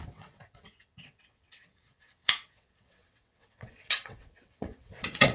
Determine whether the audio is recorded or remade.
remade